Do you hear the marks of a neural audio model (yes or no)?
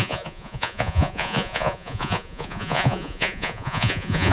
yes